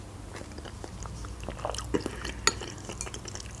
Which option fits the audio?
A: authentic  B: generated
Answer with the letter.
A